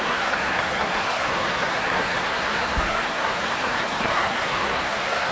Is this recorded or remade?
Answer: remade